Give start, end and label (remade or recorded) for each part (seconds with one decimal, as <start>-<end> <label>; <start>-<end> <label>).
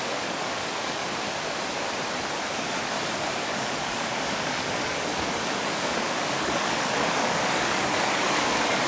0.0-1.0 remade; 1.0-2.5 recorded; 2.5-8.9 remade